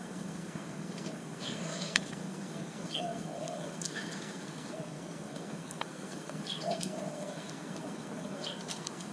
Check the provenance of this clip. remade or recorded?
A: remade